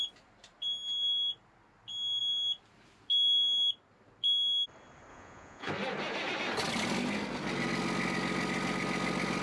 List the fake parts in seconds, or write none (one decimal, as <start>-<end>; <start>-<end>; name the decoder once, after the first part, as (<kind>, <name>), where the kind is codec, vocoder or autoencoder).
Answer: 5.1-5.7 (vocoder, Vocos)